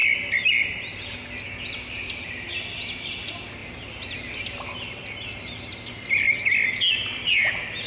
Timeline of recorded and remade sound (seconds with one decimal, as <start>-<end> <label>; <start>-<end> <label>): 0.0-7.9 recorded